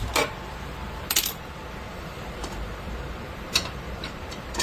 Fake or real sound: fake